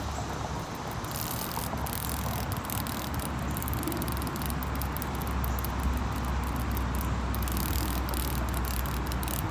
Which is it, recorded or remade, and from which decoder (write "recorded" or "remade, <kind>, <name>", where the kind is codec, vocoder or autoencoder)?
recorded